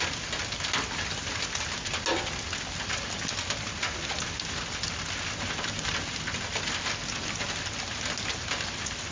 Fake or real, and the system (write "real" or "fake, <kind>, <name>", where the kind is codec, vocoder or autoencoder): real